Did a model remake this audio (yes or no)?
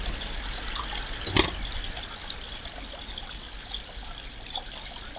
no